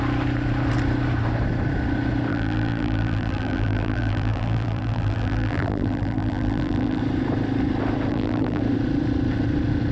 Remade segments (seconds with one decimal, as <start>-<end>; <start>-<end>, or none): 2.3-7.0; 8.1-8.6